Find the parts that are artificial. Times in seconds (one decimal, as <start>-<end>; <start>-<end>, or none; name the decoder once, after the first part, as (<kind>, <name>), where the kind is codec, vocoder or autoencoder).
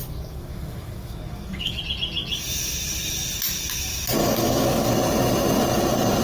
0.0-1.8 (codec, DAC); 4.2-4.9